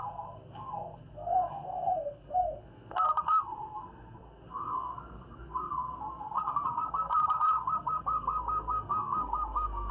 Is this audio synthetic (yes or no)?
yes